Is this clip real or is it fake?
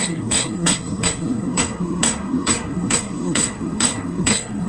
fake